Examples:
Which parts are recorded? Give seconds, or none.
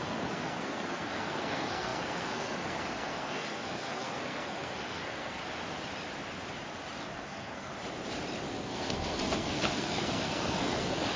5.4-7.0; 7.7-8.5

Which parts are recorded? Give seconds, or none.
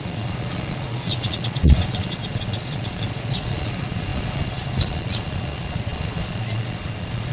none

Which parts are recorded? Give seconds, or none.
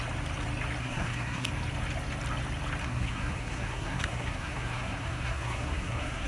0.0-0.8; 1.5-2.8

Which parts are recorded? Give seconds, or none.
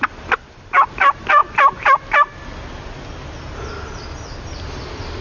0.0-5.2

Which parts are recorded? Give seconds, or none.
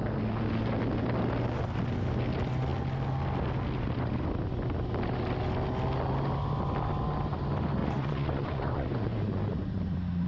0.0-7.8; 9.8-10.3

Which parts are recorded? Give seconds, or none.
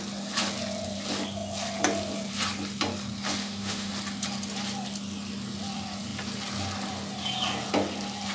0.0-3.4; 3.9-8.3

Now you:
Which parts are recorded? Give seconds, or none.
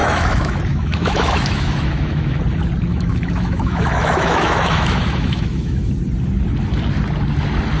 2.4-2.9; 5.9-7.8